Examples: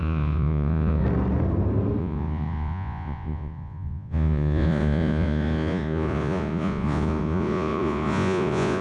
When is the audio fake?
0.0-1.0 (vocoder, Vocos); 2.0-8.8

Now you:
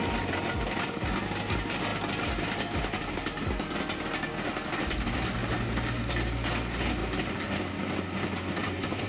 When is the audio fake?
7.0-7.6 (vocoder, BigVGAN v2)

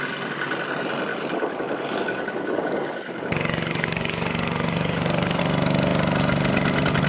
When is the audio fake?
1.1-5.4 (codec, DAC)

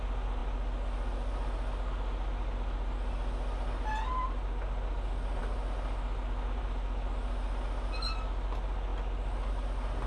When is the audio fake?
none